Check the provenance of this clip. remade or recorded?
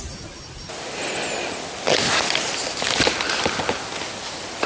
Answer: recorded